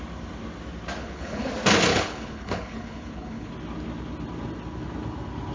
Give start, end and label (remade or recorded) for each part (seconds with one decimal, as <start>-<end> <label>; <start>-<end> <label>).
0.0-1.0 recorded; 1.0-1.5 remade; 1.5-1.9 recorded; 1.9-3.5 remade; 3.5-5.5 recorded